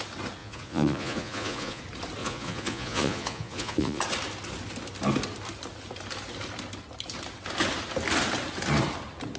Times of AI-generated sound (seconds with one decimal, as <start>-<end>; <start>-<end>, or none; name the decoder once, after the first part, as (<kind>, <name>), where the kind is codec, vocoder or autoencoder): 0.4-1.8 (vocoder, Vocos); 2.2-4.0